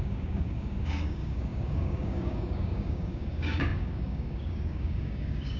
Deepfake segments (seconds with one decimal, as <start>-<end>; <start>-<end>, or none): 0.0-5.6